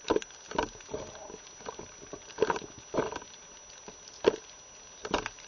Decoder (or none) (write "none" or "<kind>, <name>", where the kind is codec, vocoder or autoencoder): none